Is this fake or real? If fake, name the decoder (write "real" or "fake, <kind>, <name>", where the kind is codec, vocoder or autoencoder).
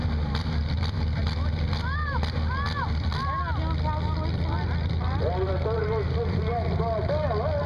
real